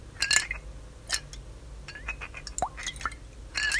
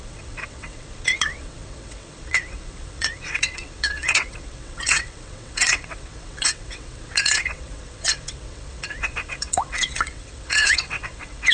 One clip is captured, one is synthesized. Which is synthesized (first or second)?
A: second